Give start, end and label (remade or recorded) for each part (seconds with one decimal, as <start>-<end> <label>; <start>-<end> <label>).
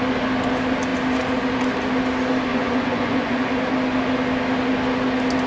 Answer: 0.0-2.5 recorded; 2.5-3.5 remade; 3.5-5.5 recorded